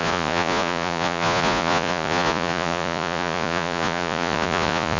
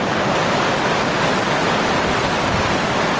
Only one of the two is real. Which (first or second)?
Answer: second